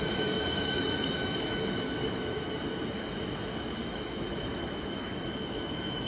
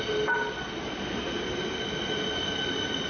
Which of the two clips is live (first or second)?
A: second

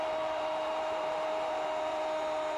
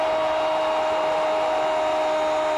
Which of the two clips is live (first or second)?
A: second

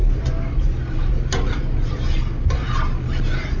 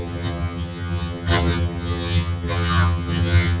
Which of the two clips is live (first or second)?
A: first